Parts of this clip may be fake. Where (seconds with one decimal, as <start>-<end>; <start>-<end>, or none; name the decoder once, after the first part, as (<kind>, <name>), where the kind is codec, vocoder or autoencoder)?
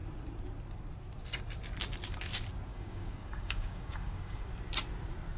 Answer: 2.7-4.5 (codec, DAC)